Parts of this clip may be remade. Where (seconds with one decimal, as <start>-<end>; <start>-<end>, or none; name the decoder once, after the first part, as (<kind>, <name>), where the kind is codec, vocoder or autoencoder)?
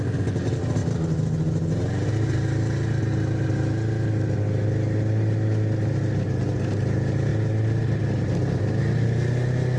none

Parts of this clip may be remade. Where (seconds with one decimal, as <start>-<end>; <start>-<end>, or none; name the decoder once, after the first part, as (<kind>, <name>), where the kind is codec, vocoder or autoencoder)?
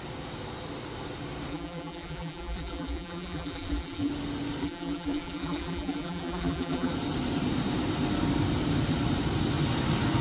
1.5-4.1 (vocoder, BigVGAN v2); 4.6-6.9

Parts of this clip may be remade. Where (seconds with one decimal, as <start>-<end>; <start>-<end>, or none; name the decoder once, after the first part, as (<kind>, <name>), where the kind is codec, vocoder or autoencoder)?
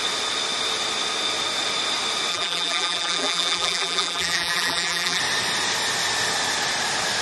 2.3-5.2 (vocoder, BigVGAN v2)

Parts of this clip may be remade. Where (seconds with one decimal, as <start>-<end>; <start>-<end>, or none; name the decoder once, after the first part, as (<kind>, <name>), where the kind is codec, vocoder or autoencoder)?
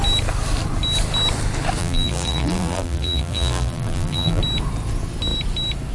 1.8-4.4 (vocoder, BigVGAN v2)